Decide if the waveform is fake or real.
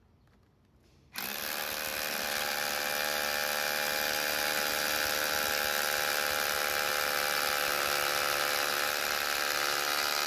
real